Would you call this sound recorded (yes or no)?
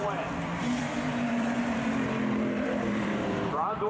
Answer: no